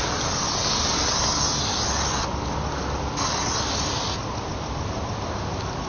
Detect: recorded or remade recorded